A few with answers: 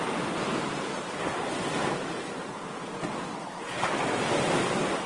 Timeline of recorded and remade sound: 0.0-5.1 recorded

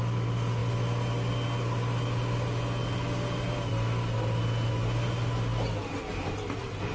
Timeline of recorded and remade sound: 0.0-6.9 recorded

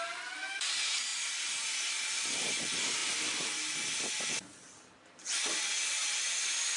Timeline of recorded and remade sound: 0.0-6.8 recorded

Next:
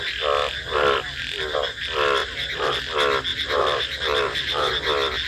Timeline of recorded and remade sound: 0.0-2.2 recorded; 2.2-2.7 remade; 2.7-3.3 recorded; 3.3-4.7 remade; 4.7-5.3 recorded

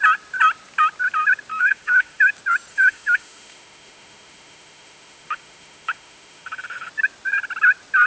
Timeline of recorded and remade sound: 0.0-1.5 recorded; 1.5-2.3 remade; 2.3-2.7 recorded; 2.7-6.9 remade; 6.9-8.1 recorded

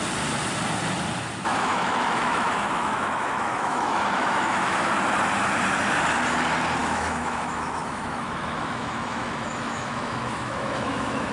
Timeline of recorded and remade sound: 0.0-1.5 recorded; 1.5-4.9 remade; 4.9-6.8 recorded; 6.8-11.3 remade